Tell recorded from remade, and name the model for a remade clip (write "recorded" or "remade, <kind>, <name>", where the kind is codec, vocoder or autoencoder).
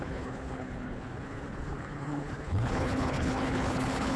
remade, codec, HILCodec